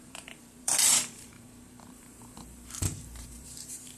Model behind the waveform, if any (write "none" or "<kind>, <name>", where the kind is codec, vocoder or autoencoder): vocoder, BigVGAN v2